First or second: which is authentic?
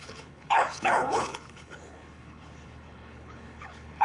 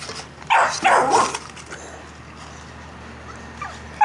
second